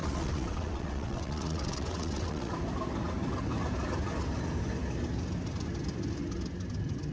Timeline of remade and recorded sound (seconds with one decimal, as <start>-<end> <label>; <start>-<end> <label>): 0.0-2.5 remade; 2.5-7.1 recorded